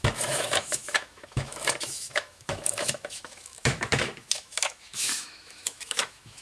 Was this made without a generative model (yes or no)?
no